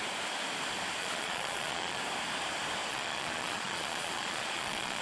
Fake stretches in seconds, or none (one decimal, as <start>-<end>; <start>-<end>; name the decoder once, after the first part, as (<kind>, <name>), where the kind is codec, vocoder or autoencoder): 1.0-2.0 (vocoder, Vocos); 2.9-5.0